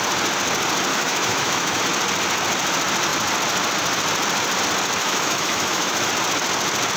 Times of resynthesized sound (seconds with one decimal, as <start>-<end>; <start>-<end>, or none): 0.9-1.8; 5.0-6.1